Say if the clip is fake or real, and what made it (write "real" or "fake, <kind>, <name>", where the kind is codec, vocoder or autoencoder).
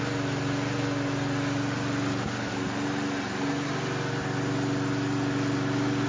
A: real